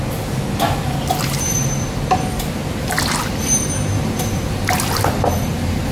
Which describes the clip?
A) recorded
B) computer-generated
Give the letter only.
A